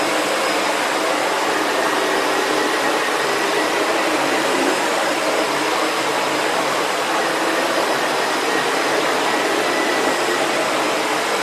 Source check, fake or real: fake